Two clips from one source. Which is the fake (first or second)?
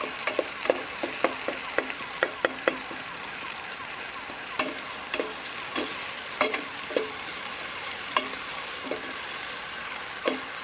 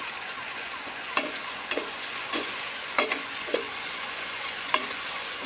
second